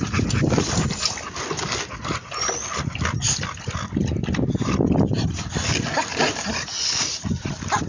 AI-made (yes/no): no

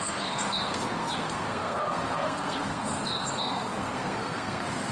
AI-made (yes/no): yes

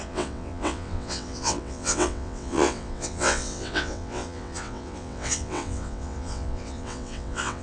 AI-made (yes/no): yes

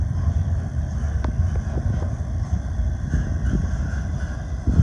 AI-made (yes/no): no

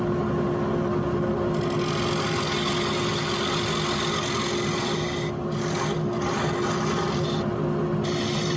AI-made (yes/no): no